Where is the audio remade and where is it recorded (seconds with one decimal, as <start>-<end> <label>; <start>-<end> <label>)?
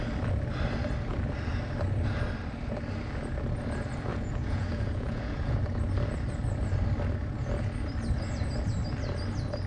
0.0-4.1 recorded; 4.1-5.5 remade; 5.5-9.7 recorded